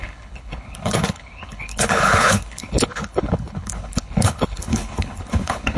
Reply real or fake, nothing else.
fake